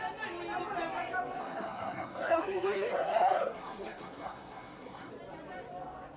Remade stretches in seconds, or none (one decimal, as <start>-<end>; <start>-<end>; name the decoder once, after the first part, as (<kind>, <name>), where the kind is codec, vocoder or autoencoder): 1.4-5.1 (codec, SNAC)